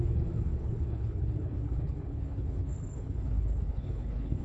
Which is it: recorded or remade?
remade